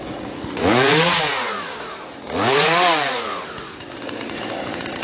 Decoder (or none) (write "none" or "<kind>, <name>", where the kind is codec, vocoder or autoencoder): vocoder, Vocos